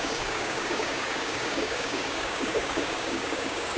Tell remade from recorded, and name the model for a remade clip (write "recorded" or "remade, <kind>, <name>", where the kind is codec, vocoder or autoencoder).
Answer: remade, codec, DAC